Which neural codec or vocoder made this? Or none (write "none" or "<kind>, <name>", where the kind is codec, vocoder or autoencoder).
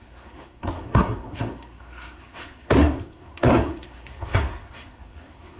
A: codec, SNAC